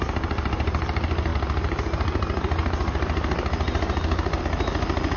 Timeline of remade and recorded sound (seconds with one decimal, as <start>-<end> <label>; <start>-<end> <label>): 0.0-5.2 recorded